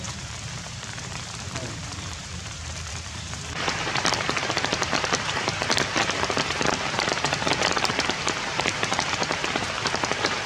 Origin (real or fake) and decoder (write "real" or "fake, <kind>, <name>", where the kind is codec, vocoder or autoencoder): fake, vocoder, BigVGAN v2